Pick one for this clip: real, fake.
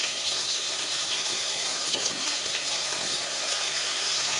fake